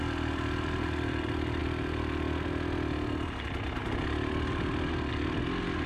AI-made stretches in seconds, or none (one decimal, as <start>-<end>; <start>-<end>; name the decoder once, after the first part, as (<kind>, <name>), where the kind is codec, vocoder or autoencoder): none